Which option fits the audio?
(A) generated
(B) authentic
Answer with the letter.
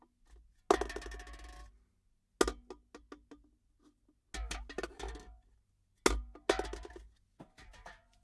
B